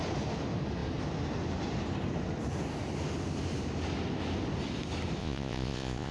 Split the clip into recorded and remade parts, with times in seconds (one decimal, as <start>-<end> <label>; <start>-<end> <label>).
0.0-5.2 recorded; 5.2-6.1 remade